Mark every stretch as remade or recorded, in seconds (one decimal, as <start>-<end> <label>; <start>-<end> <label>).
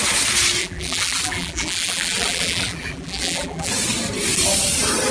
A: 0.0-0.6 recorded; 0.6-3.7 remade; 3.7-5.1 recorded